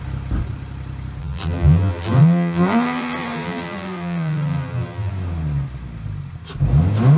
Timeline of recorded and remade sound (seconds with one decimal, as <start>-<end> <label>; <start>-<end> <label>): 0.0-1.2 recorded; 1.2-5.1 remade; 5.1-7.2 recorded